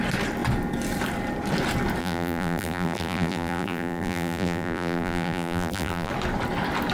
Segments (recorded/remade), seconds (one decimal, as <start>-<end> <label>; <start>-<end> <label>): 0.0-2.0 recorded; 2.0-6.1 remade; 6.1-6.9 recorded